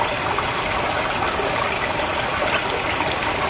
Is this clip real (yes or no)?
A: yes